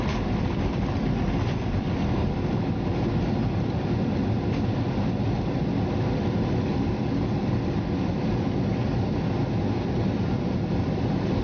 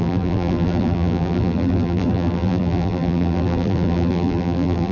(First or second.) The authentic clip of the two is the first